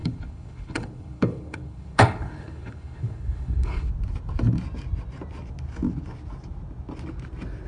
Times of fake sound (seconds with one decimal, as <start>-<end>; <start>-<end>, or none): 0.0-3.9